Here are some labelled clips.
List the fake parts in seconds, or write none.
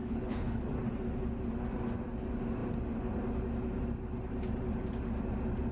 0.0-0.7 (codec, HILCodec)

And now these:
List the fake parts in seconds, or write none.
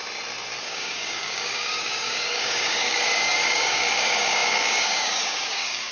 0.6-5.9 (codec, DAC)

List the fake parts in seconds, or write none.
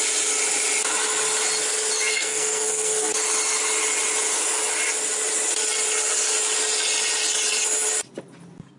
2.1-3.1 (codec, SNAC)